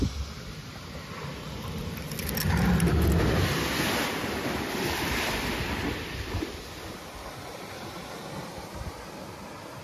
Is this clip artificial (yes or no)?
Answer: no